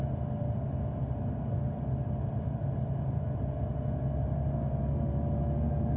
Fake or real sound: real